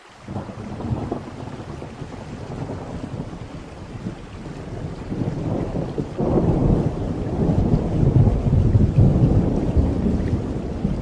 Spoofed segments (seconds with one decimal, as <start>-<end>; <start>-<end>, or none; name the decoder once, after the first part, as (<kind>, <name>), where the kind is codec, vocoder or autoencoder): none